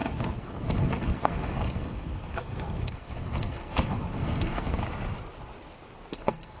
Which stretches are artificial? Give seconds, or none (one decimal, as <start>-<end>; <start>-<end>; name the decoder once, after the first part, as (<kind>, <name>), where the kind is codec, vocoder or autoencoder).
0.0-4.8 (codec, SNAC); 6.1-6.6

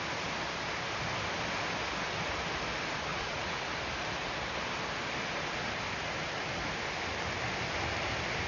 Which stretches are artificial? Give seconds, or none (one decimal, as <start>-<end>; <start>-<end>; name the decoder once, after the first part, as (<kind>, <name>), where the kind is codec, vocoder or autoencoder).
3.1-3.7 (vocoder, Vocos)

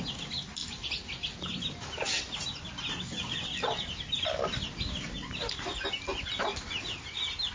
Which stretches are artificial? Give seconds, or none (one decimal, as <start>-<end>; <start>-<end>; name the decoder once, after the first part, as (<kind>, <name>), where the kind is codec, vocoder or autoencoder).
none

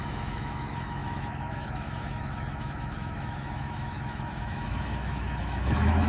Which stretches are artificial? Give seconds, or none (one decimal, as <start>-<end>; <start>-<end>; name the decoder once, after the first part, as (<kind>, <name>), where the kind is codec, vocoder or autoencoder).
0.0-6.1 (autoencoder, DAC-VAE)

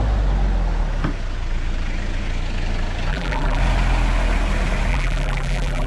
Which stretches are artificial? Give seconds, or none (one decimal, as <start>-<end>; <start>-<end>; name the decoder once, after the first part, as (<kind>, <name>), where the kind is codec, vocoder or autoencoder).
3.1-3.6 (vocoder, BigVGAN v2); 4.9-5.9